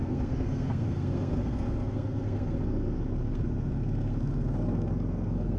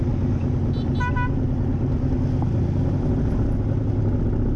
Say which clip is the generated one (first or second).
first